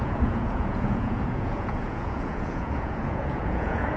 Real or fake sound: fake